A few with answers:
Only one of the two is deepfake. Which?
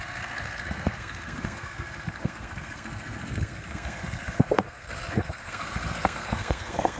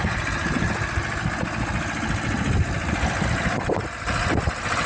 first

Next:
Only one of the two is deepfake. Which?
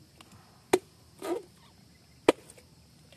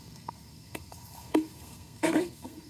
second